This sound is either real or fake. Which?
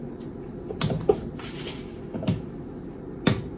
real